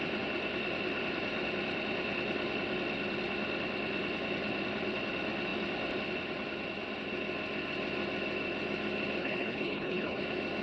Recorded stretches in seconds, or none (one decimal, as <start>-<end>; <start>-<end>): 0.0-9.2; 10.2-10.6